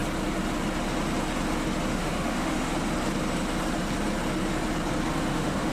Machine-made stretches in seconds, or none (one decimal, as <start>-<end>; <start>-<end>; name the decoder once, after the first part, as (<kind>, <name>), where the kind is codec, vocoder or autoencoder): 1.9-2.7 (autoencoder, DAC-VAE); 5.1-5.7